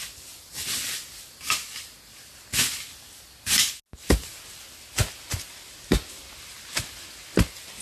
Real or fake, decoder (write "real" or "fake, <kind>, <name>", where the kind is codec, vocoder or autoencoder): real